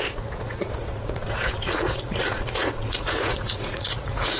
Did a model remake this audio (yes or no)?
yes